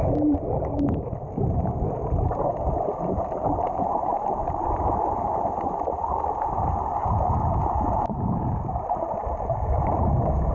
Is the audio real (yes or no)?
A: no